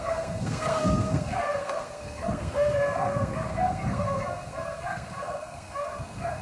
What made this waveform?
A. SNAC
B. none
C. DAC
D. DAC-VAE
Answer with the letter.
A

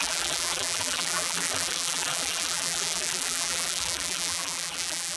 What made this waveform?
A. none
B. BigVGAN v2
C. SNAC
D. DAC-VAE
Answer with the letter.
B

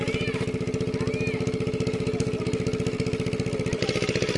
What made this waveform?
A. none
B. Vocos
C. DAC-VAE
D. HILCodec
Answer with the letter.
A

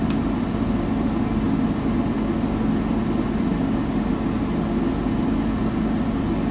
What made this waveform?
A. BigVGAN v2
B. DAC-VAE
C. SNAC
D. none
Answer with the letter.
D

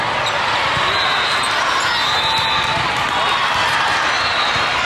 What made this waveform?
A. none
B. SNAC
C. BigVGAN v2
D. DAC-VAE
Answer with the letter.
A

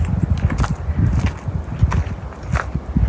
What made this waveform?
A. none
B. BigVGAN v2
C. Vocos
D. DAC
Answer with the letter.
A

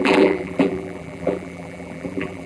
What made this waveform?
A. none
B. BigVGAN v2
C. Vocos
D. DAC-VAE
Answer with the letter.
B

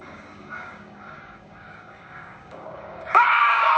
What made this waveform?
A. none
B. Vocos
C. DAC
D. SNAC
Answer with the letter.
C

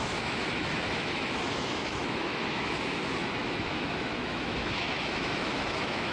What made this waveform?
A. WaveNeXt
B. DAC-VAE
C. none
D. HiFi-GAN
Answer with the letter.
B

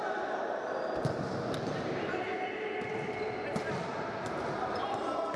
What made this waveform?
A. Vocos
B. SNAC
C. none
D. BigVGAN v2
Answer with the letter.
C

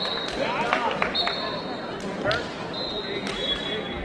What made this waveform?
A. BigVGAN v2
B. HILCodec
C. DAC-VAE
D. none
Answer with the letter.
D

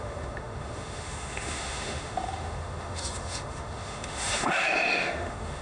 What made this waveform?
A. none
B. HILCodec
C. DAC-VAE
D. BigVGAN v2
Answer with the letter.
C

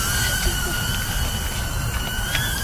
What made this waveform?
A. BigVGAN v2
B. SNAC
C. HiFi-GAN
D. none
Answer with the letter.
D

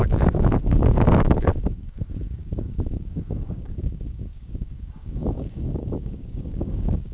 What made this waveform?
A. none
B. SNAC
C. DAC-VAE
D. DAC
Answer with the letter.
D